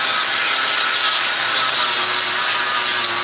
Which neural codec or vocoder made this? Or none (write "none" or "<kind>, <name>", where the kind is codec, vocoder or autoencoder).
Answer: none